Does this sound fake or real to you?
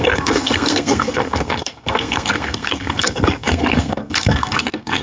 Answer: fake